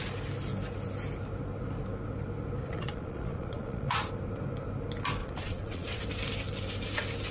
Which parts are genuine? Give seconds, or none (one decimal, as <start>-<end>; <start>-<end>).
0.0-2.6; 4.1-5.2; 6.0-7.3